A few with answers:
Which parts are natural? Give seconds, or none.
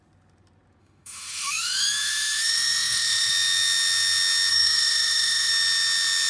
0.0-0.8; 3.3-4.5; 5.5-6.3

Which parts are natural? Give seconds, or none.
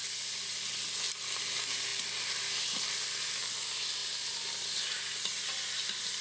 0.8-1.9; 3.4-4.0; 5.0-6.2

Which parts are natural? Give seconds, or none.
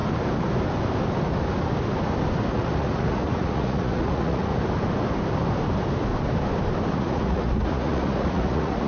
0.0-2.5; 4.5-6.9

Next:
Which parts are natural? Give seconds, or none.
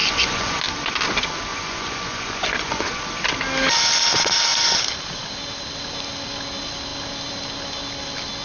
0.6-1.5; 3.0-8.4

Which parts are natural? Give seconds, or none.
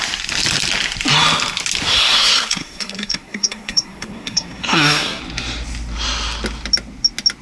0.0-1.9; 5.2-7.4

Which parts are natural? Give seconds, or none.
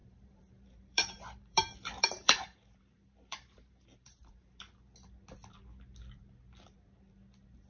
4.6-7.7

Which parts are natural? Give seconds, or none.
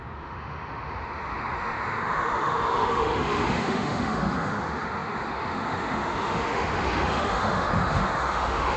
none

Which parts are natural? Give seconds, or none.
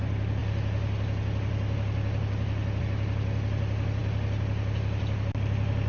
0.0-5.9